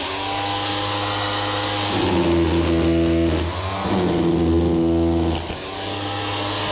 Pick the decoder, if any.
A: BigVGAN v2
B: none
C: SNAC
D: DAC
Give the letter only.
B